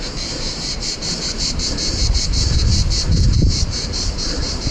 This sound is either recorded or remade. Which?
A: remade